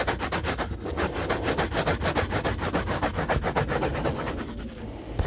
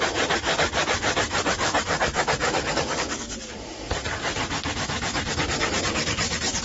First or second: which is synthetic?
second